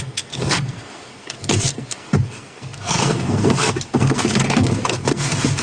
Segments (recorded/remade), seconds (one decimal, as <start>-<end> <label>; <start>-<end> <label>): 0.0-5.6 remade